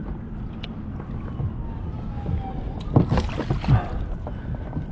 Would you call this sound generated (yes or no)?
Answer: no